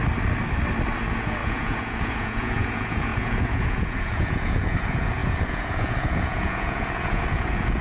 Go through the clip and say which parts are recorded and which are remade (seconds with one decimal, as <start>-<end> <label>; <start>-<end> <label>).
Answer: 0.0-1.0 recorded; 1.0-7.8 remade